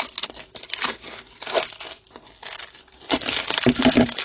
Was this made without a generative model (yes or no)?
yes